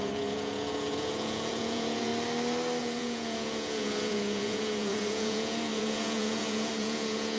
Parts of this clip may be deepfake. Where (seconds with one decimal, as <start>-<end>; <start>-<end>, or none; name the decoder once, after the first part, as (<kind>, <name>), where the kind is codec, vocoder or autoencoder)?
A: 0.0-2.1 (vocoder, Vocos); 2.8-7.4